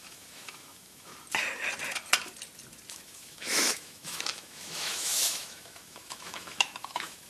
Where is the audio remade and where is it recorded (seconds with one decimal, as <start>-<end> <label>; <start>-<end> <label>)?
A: 0.0-1.1 remade; 1.1-2.9 recorded; 2.9-7.3 remade